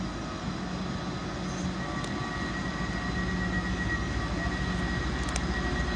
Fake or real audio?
real